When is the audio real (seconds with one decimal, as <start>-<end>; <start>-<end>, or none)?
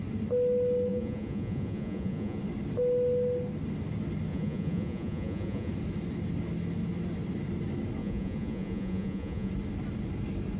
0.0-0.9; 2.4-4.3; 5.7-8.0; 9.5-10.6